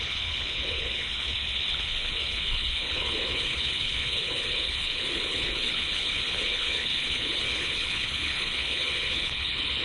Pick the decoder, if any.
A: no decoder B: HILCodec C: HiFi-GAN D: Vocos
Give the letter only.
B